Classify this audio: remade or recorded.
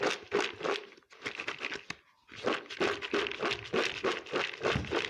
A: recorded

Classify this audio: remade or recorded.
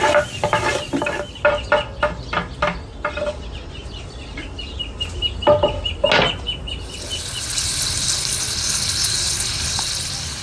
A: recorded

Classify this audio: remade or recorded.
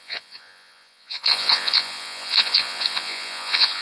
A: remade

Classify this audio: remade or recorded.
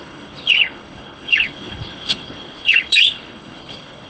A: remade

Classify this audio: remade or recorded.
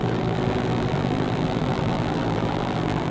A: remade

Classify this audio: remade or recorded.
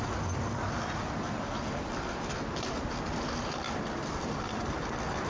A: recorded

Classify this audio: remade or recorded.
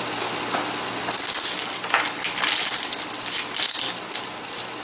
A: recorded